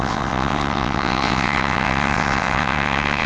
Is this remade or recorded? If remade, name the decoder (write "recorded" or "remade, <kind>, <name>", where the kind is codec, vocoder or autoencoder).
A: remade, vocoder, WaveNeXt